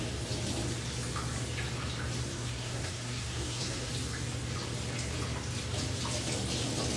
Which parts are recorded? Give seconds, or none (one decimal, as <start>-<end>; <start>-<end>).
0.0-2.3; 3.9-7.0